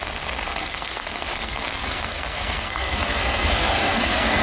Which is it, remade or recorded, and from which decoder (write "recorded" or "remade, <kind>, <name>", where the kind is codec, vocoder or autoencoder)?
remade, codec, SNAC